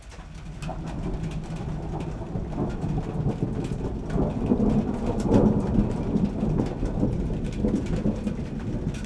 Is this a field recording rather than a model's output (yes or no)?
yes